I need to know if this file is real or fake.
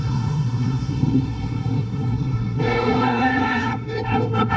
fake